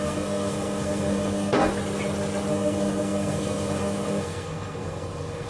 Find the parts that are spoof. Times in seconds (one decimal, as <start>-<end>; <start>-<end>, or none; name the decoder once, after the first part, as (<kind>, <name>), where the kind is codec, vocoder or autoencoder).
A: 0.0-1.7 (codec, SNAC); 2.5-5.5